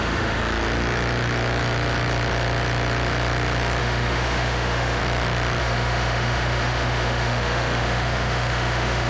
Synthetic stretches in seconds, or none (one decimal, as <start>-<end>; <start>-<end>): 0.0-0.4; 3.8-5.0; 5.6-9.1